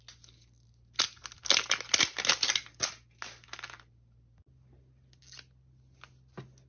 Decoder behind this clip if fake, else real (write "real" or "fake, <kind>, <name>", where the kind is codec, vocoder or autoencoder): real